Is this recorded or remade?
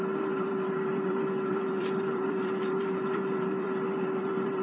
remade